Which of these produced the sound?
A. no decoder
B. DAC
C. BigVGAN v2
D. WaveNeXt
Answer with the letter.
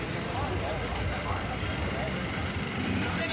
C